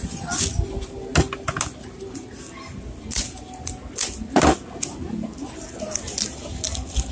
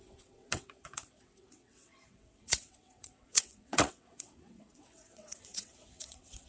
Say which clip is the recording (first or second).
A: first